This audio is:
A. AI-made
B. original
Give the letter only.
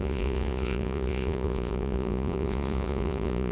A